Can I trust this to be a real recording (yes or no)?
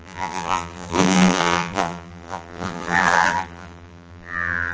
no